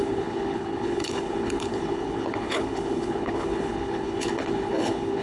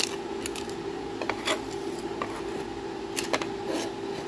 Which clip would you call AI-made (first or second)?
first